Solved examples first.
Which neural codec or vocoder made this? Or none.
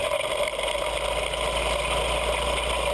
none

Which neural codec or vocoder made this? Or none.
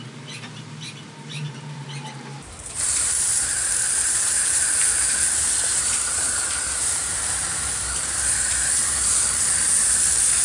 vocoder, BigVGAN v2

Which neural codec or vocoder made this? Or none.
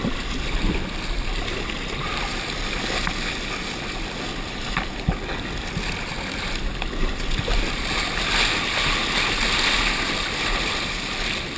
none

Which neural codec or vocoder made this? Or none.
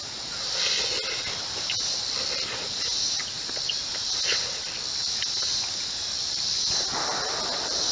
none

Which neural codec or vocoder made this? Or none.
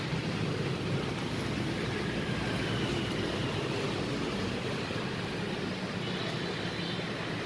none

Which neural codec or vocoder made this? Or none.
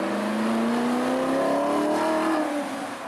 none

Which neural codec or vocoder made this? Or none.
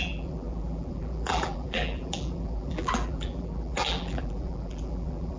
vocoder, BigVGAN v2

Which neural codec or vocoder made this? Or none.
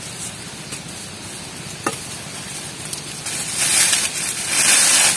none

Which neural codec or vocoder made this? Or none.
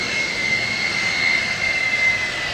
none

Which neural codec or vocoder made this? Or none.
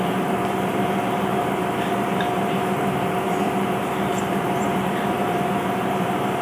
vocoder, BigVGAN v2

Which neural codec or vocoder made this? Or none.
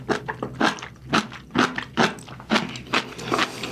none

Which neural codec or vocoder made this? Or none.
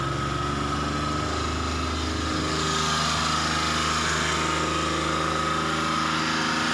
none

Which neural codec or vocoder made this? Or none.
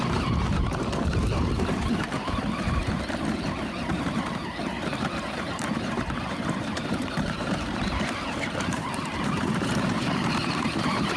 vocoder, BigVGAN v2